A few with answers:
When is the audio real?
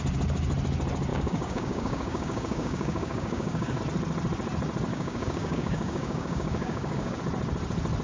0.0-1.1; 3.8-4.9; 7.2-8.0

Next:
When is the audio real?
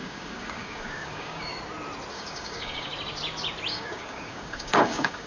1.5-2.1; 2.9-3.7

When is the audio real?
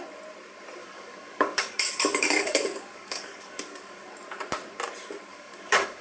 0.0-0.8; 4.1-5.3